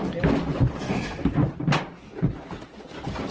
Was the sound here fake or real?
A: real